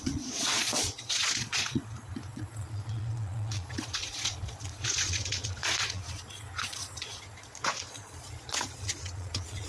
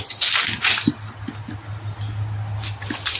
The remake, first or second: first